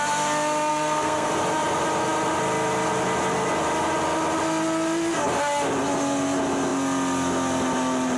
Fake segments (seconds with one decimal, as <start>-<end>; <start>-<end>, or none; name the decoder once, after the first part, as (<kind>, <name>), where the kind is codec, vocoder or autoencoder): 0.7-1.3 (codec, SNAC)